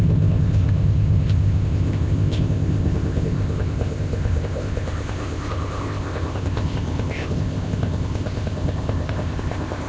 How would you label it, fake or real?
fake